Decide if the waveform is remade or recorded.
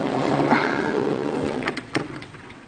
remade